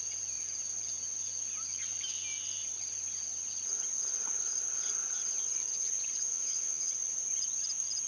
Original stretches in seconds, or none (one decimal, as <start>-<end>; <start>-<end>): 0.0-6.3; 6.9-8.1